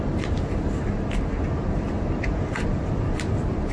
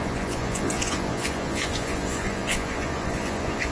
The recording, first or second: first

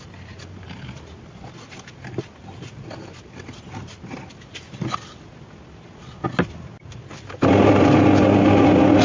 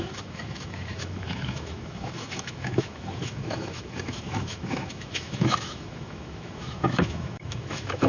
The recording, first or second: first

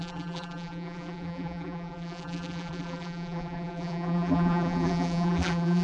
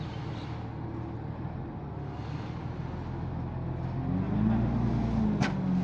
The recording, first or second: second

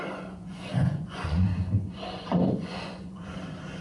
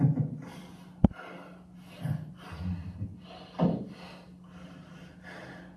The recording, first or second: second